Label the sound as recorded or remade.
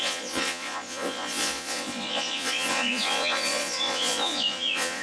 remade